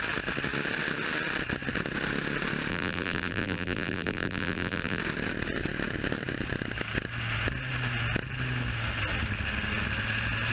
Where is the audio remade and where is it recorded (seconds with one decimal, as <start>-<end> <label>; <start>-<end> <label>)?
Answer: 0.0-2.7 recorded; 2.7-5.0 remade; 5.0-10.5 recorded